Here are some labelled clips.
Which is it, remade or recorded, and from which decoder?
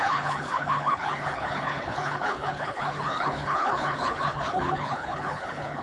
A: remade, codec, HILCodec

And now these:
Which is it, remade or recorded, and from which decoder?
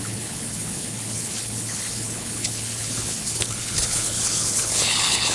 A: remade, codec, HILCodec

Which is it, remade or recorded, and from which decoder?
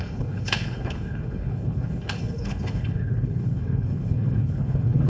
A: remade, codec, HILCodec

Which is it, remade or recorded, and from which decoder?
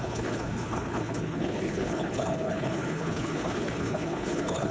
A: remade, codec, HILCodec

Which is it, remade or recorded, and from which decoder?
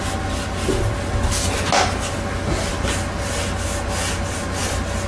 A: recorded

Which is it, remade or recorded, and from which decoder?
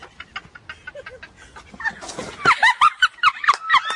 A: recorded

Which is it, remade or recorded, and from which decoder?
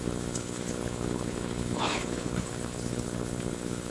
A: remade, codec, HILCodec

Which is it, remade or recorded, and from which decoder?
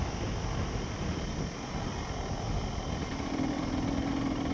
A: recorded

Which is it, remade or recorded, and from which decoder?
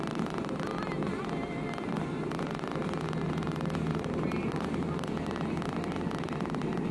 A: recorded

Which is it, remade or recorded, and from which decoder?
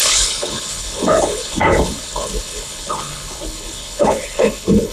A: remade, codec, HILCodec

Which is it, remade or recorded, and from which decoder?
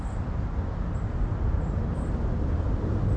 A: recorded